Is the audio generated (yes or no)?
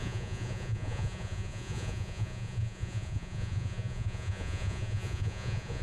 yes